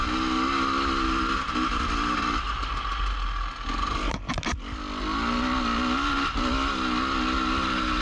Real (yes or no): yes